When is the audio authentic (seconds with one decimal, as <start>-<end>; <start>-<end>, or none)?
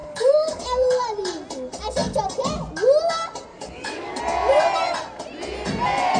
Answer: 0.6-3.5; 4.2-6.2